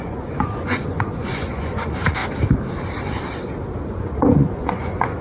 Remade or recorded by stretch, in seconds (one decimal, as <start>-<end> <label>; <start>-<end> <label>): 0.0-2.2 remade; 2.2-4.0 recorded; 4.0-5.2 remade